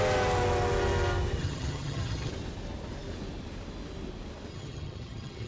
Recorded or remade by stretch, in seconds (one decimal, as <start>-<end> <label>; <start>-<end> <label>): 0.0-1.4 recorded; 1.4-2.3 remade; 2.3-4.5 recorded; 4.5-5.5 remade